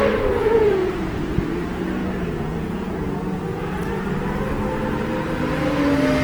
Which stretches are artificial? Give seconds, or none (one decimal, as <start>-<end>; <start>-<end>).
0.4-1.5; 2.0-3.9